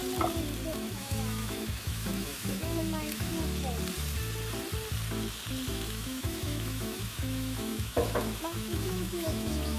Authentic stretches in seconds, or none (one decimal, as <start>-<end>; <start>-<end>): 0.0-0.7; 3.3-5.7